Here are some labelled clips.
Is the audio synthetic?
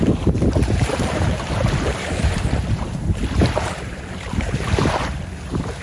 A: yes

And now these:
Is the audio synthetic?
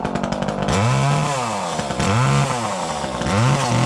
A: no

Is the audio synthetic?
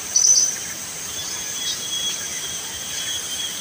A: yes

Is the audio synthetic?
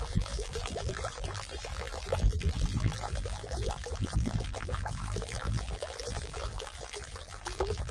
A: yes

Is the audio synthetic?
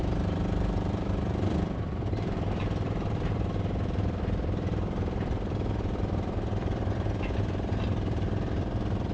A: yes